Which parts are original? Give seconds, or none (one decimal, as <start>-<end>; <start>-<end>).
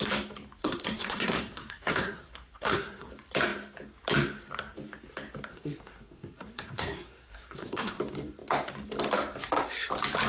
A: 0.0-0.6; 3.1-5.5; 8.0-10.3